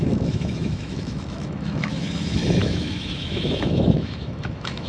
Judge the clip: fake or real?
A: fake